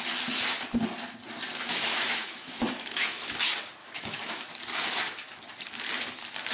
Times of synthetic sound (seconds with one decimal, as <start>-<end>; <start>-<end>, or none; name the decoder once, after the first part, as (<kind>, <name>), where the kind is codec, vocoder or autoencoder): 1.7-3.3 (autoencoder, DAC-VAE); 3.8-4.6